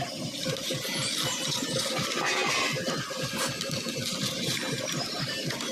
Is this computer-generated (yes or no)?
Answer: no